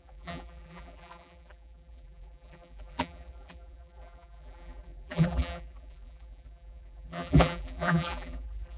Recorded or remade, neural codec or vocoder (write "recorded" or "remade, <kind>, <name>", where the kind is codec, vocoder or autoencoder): remade, vocoder, BigVGAN v2